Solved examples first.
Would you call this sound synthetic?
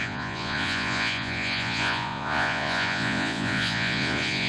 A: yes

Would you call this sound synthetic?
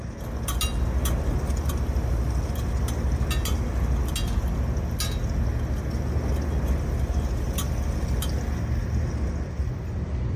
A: no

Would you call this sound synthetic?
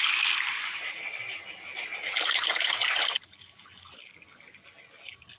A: no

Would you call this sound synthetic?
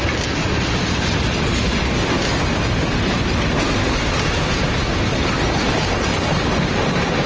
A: no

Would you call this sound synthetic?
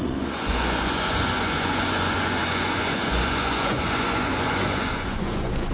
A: yes